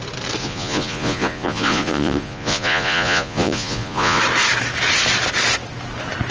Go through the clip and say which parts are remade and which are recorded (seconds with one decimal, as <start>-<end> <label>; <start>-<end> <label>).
0.0-0.4 recorded; 0.4-4.2 remade; 4.2-6.3 recorded